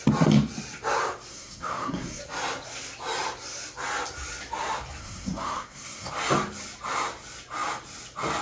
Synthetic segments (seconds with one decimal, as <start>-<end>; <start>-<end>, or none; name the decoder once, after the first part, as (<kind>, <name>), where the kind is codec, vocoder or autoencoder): 1.3-2.2 (codec, SNAC); 5.0-6.1